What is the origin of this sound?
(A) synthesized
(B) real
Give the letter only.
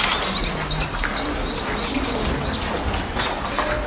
B